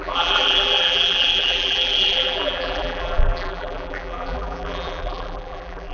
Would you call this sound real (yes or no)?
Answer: no